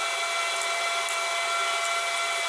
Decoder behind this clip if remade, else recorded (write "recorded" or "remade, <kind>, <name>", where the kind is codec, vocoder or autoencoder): recorded